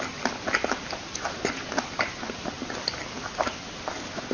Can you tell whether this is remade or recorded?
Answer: recorded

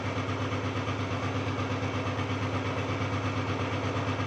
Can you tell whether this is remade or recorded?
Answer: recorded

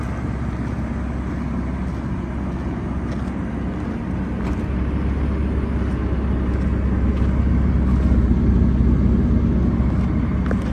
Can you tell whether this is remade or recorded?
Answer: recorded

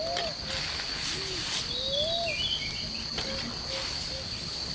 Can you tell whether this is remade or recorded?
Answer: recorded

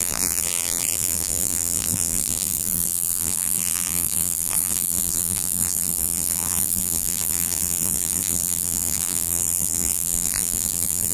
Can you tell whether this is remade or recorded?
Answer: remade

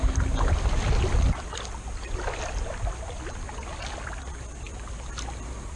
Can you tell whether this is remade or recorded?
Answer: recorded